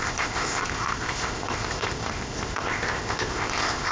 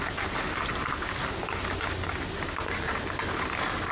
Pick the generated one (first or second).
first